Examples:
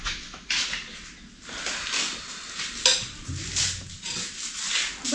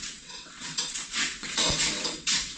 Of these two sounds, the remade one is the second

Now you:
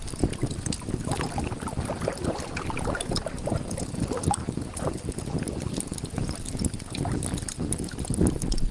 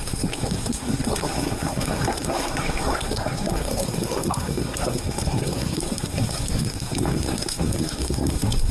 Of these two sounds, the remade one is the second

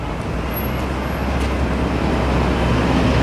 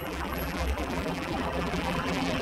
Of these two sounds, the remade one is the second